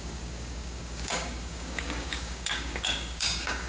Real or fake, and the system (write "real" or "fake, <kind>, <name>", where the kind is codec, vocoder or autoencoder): fake, codec, DAC